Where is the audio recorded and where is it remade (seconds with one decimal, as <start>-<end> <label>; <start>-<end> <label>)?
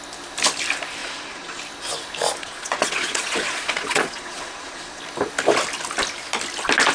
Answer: 0.0-1.0 recorded; 1.0-1.6 remade; 1.6-2.4 recorded; 2.4-5.0 remade; 5.0-6.9 recorded